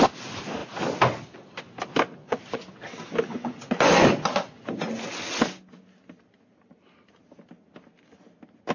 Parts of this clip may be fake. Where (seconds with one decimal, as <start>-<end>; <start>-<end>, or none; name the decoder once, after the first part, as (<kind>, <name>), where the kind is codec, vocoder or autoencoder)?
2.2-2.8 (vocoder, Vocos); 3.3-4.7